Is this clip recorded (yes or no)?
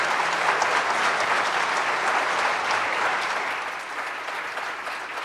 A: yes